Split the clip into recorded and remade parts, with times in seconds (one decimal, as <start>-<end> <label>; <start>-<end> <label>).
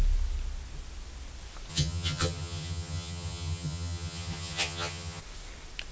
0.0-1.7 recorded; 1.7-5.2 remade; 5.2-5.9 recorded